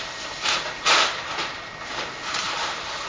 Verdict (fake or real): fake